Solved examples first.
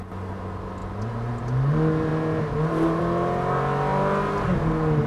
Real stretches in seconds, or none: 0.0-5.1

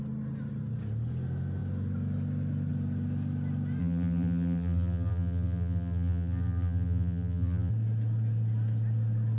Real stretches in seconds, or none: 0.0-3.8; 7.7-9.4